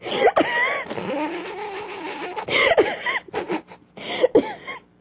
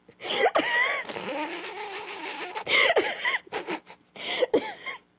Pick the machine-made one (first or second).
second